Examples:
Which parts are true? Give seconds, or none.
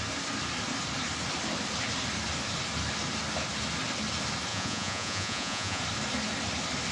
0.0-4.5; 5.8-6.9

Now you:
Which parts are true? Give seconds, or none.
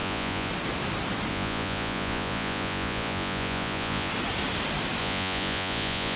0.5-1.3; 4.1-5.0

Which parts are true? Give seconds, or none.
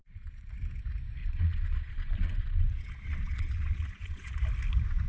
0.5-1.2; 4.3-5.1